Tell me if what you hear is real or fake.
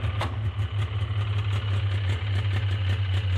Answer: real